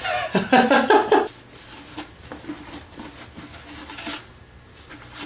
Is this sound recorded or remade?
recorded